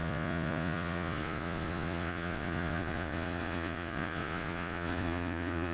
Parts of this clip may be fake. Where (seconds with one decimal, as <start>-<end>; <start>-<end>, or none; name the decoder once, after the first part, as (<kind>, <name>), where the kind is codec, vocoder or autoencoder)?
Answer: 0.0-5.7 (vocoder, Vocos)